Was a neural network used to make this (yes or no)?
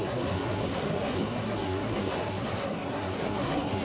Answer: yes